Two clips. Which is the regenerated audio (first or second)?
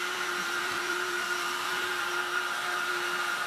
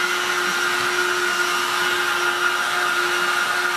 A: first